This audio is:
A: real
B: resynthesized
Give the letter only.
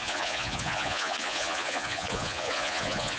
B